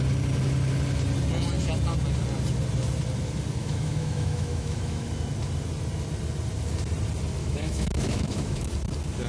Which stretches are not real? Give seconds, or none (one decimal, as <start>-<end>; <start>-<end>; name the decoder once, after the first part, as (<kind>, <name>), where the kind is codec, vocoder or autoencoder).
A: 3.6-5.1 (autoencoder, DAC-VAE); 7.4-8.7